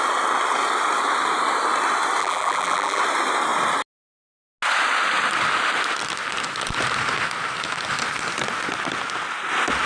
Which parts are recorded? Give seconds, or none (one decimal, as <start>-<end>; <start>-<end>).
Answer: 0.0-2.2; 3.0-9.9